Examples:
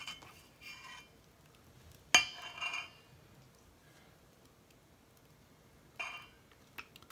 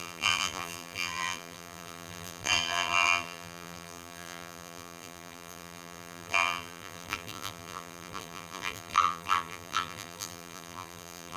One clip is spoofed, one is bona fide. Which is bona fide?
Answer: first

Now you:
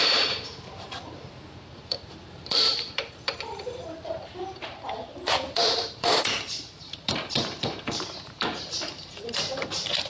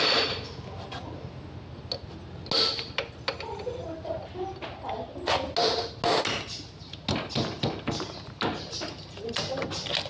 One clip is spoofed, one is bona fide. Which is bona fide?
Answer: second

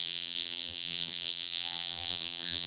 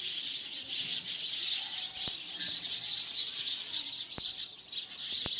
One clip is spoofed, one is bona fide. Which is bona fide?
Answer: second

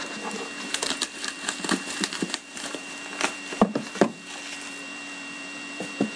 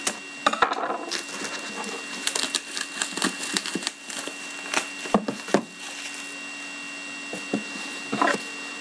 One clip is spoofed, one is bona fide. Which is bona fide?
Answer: second